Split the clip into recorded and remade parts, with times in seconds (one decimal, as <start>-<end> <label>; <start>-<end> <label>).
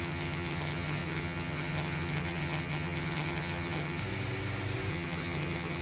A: 0.0-4.0 remade; 4.0-4.9 recorded; 4.9-5.8 remade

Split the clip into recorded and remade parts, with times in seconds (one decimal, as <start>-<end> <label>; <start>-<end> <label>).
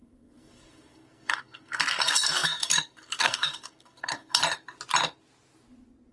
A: 0.0-4.4 remade; 4.4-6.1 recorded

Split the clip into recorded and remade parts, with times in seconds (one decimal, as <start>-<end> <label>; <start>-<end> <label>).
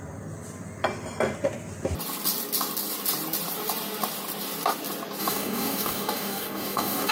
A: 0.0-5.2 recorded; 5.2-7.1 remade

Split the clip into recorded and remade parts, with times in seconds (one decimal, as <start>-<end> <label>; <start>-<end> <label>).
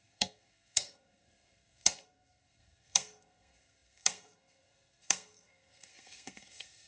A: 0.0-6.9 remade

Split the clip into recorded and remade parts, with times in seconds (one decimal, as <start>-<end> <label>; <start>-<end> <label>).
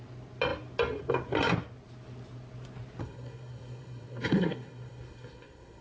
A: 0.0-3.0 recorded; 3.0-5.8 remade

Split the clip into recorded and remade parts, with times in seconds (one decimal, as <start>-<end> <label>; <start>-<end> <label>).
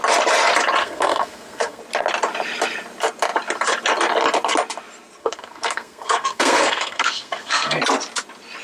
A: 0.0-0.8 recorded; 0.8-1.8 remade; 1.8-5.2 recorded; 5.2-7.8 remade; 7.8-8.6 recorded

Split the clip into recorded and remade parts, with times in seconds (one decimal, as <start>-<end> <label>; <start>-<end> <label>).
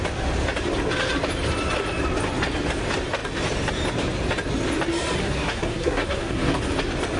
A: 0.0-5.2 recorded; 5.2-6.6 remade; 6.6-7.2 recorded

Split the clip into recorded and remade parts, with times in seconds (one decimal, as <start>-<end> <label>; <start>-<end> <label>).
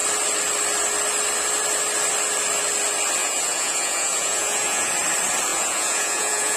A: 0.0-3.2 recorded; 3.2-4.9 remade; 4.9-5.5 recorded; 5.5-6.6 remade